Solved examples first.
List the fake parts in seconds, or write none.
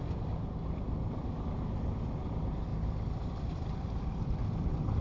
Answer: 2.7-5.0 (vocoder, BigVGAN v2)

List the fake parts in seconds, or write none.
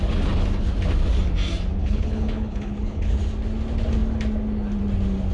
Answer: 1.8-3.2 (codec, HILCodec)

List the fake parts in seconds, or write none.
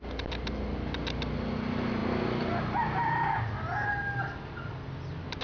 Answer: none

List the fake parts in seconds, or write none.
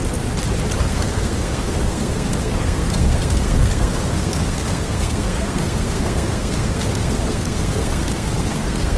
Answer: 0.9-9.0 (codec, SNAC)